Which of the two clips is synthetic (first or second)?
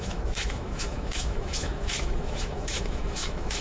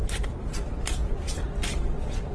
first